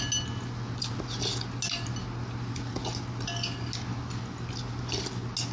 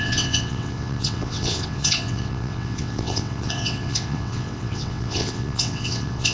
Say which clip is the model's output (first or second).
second